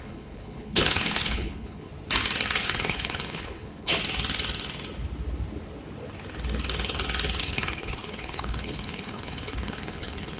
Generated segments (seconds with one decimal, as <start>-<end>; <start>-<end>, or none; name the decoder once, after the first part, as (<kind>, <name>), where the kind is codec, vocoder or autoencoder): 0.0-1.9 (codec, HILCodec); 2.6-3.9; 7.4-10.4

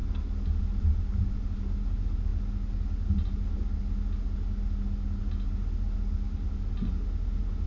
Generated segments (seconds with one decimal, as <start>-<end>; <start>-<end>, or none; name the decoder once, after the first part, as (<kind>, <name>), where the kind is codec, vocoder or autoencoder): none

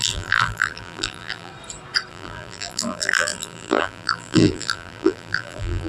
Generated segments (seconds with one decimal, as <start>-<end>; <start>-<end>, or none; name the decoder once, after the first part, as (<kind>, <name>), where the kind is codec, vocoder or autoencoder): 0.0-1.5 (vocoder, BigVGAN v2); 2.1-5.9

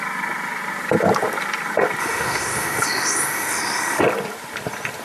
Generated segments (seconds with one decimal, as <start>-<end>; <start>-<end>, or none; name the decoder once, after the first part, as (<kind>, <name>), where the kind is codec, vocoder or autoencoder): 2.0-4.0 (autoencoder, DAC-VAE)

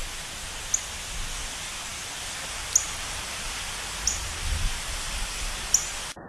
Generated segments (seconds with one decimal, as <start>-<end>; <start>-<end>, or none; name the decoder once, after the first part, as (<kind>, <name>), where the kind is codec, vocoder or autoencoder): none

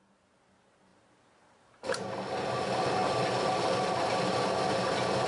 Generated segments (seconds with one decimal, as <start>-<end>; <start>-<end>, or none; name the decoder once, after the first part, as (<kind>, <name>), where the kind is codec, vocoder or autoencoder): 0.9-2.1 (vocoder, BigVGAN v2)

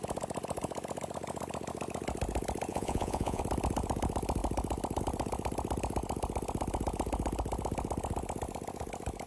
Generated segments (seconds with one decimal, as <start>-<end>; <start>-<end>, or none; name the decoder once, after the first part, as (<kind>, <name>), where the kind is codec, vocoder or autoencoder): 2.7-3.4 (vocoder, Vocos)

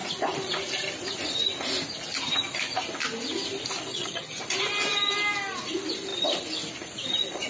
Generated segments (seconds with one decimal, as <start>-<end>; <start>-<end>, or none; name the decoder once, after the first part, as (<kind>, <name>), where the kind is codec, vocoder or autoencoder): 3.9-4.4 (vocoder, HiFi-GAN)